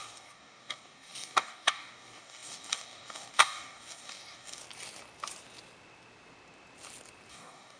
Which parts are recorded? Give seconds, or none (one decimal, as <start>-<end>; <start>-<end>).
4.6-7.3